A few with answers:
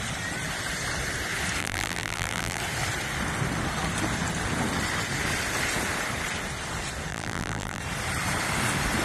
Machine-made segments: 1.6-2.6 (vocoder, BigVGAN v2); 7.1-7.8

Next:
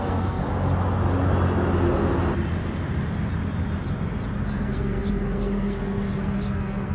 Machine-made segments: 0.0-0.4 (codec, SNAC); 4.5-6.9

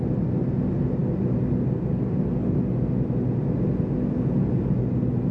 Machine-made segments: none

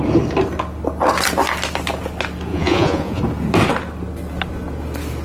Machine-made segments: 2.5-3.2 (vocoder, Vocos)

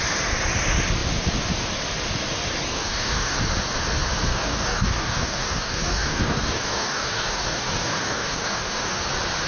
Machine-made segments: 2.7-3.4 (codec, DAC); 4.3-9.0

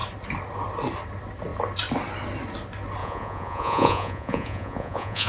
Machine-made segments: 3.0-5.3 (vocoder, Vocos)

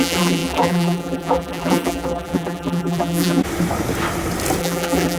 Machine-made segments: 0.0-3.4 (vocoder, BigVGAN v2); 4.6-5.2

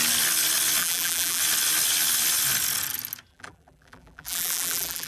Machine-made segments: 0.8-1.4 (vocoder, BigVGAN v2); 3.3-5.1